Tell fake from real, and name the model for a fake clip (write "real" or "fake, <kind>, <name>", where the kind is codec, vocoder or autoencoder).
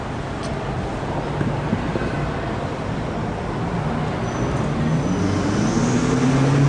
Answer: real